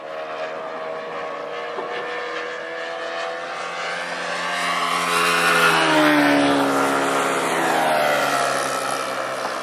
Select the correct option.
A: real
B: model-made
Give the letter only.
A